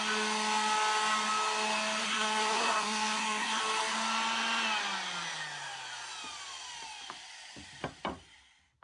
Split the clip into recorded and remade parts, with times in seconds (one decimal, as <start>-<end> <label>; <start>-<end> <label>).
0.0-2.0 recorded; 2.0-3.6 remade; 3.6-8.8 recorded